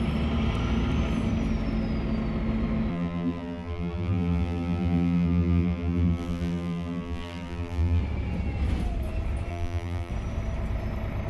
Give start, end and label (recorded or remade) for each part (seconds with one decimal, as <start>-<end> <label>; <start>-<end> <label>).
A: 0.0-2.9 recorded; 2.9-8.0 remade; 8.0-9.5 recorded; 9.5-10.1 remade; 10.1-11.3 recorded